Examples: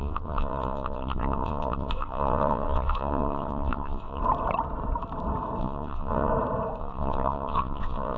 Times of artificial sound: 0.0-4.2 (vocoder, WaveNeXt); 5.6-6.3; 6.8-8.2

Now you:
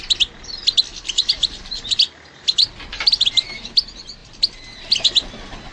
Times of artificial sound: 0.9-2.8 (vocoder, BigVGAN v2)

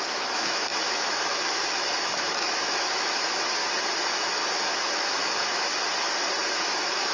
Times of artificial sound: 0.0-3.6 (autoencoder, DAC-VAE); 4.1-5.7; 6.6-7.1

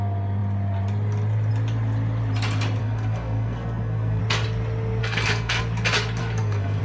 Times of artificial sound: 2.8-4.2 (codec, SNAC); 5.0-5.6; 6.2-6.8

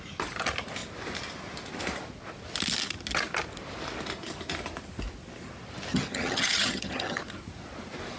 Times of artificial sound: 5.9-7.2 (vocoder, HiFi-GAN)

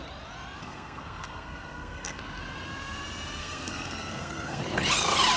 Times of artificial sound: 0.6-2.2 (codec, SNAC); 3.4-4.6

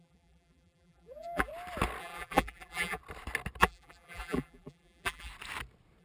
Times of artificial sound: 0.0-1.5 (vocoder, BigVGAN v2); 2.0-3.0; 3.6-5.3

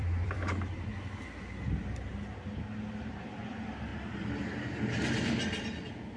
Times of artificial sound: 0.0-0.9 (vocoder, BigVGAN v2); 1.6-2.1; 3.0-6.2